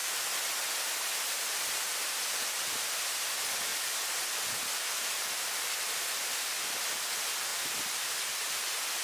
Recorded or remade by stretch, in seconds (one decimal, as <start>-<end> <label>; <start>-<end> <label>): 0.0-3.7 recorded; 3.7-4.6 remade; 4.6-9.0 recorded